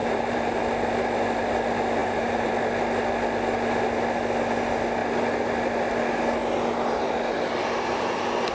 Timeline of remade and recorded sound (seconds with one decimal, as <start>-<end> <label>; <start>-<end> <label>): 0.0-0.6 remade; 0.6-2.0 recorded; 2.0-2.5 remade; 2.5-8.5 recorded